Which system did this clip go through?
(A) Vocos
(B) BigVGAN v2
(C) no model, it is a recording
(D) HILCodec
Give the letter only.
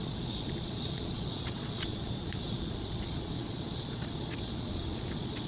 A